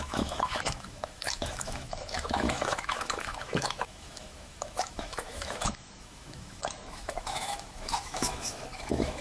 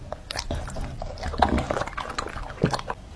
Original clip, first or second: second